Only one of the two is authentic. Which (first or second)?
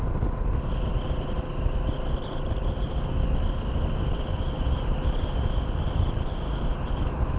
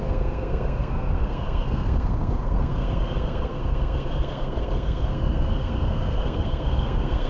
first